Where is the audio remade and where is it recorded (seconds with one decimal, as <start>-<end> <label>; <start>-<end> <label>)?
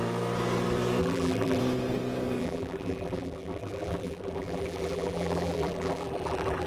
0.0-1.0 recorded; 1.0-1.6 remade; 1.6-2.4 recorded; 2.4-6.7 remade